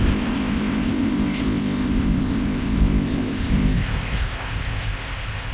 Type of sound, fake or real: fake